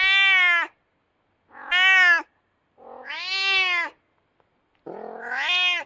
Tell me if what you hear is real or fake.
real